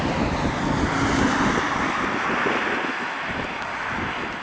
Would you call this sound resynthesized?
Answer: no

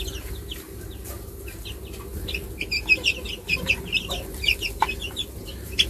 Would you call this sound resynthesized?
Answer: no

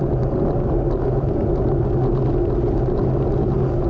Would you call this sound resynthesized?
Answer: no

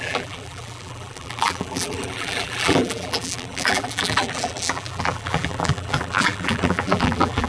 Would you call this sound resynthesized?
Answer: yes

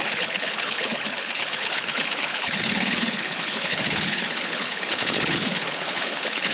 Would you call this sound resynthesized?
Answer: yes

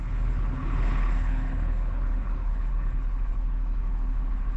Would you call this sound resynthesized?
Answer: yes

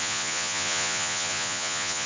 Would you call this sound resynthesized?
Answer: yes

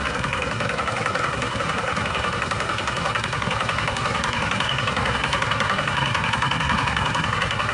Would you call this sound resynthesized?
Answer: yes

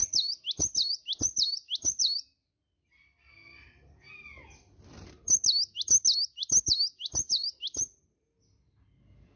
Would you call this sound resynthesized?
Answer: no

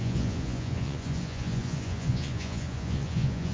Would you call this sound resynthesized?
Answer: yes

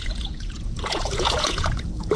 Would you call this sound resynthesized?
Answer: yes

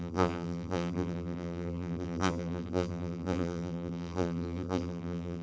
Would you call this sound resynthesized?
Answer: yes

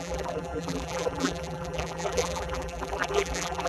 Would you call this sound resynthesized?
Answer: yes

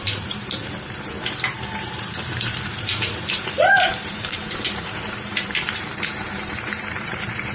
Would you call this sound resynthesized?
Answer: yes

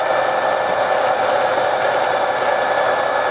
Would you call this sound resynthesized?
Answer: no